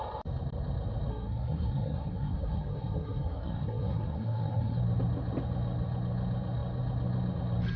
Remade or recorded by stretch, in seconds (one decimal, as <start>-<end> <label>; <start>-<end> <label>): 0.0-1.1 recorded; 1.1-4.8 remade; 4.8-7.8 recorded